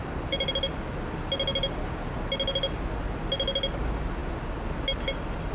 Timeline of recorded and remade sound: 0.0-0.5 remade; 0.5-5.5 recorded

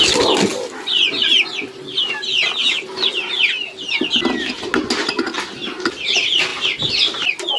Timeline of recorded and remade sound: 0.0-7.6 recorded

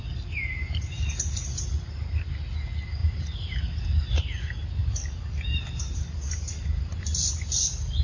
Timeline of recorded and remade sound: 0.0-3.0 recorded; 3.0-3.6 remade; 3.6-8.0 recorded

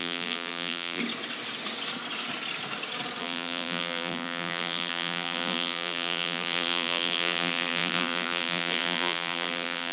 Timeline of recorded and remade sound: 0.0-1.0 remade; 1.0-3.2 recorded; 3.2-9.9 remade

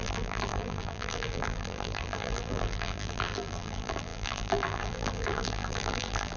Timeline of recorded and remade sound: 0.0-6.4 remade